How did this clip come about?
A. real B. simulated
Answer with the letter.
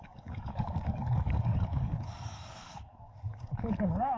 B